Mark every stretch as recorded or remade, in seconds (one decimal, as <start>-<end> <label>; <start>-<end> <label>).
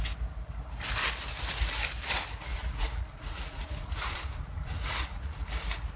0.0-2.5 recorded; 2.5-5.4 remade; 5.4-6.0 recorded